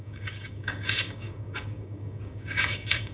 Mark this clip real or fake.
fake